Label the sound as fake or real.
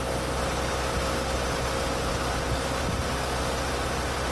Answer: real